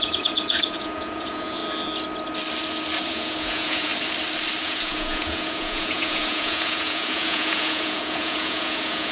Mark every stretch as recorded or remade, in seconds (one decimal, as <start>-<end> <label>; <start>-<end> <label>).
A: 0.0-1.6 remade; 1.6-3.1 recorded; 3.1-3.9 remade; 3.9-4.6 recorded; 4.6-9.1 remade